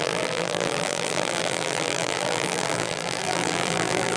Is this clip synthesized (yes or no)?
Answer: yes